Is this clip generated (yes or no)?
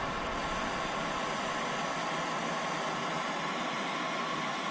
no